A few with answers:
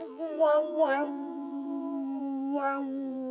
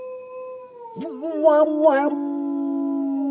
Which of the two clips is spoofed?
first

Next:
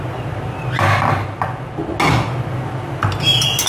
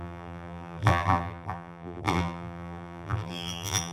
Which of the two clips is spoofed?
second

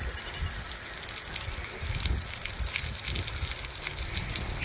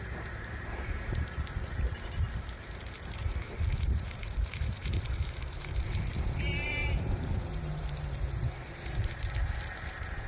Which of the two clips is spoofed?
second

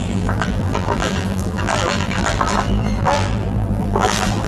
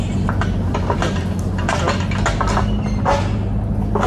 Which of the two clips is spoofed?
first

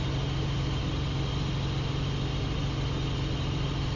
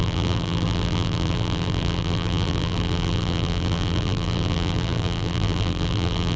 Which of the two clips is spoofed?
second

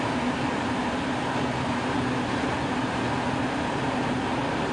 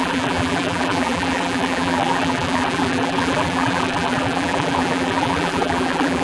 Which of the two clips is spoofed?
second